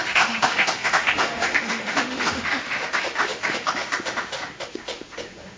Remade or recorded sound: remade